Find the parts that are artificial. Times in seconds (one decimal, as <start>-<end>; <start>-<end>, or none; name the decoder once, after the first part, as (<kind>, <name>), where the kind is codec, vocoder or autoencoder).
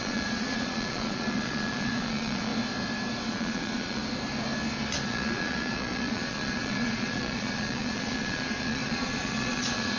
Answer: 0.0-2.5 (vocoder, Vocos); 3.3-4.0; 5.0-10.0